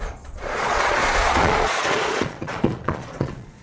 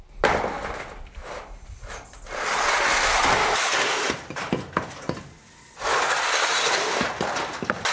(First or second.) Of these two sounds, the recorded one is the second